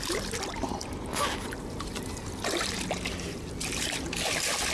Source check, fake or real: real